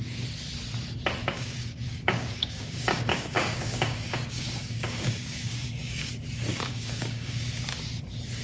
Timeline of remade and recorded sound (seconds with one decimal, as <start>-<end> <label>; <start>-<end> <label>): 0.0-1.2 recorded; 1.2-6.1 remade; 6.1-6.5 recorded; 6.5-7.5 remade; 7.5-8.4 recorded